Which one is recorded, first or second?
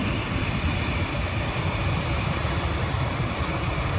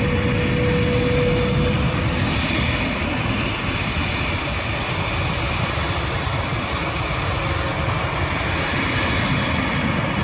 second